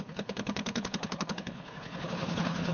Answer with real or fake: fake